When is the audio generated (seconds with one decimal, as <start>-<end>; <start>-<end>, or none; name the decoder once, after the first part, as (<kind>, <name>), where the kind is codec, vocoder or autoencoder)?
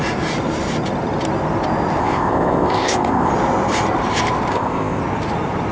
2.0-3.3 (codec, ZipCodec); 4.5-5.0